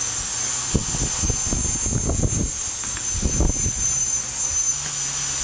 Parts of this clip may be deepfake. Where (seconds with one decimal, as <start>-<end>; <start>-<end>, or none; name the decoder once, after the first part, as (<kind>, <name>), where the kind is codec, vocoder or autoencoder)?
none